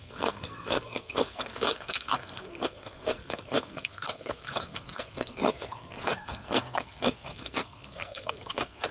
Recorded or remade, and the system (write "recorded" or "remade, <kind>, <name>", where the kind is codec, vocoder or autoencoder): remade, codec, SNAC